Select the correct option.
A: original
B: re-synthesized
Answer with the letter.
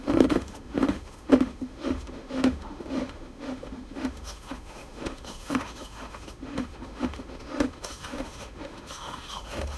B